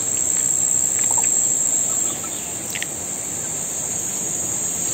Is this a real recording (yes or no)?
yes